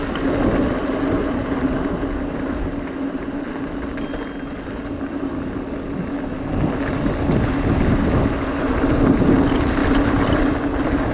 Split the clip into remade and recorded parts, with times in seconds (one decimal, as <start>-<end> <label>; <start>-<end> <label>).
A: 0.0-9.8 recorded; 9.8-10.5 remade; 10.5-11.1 recorded